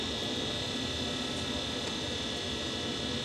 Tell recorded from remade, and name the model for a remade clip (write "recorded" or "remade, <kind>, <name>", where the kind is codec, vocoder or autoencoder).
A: recorded